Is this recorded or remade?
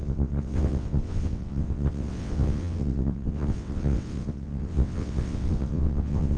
remade